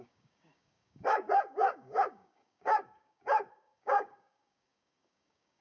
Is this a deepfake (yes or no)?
yes